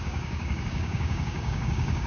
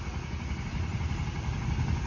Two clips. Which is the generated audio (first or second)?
first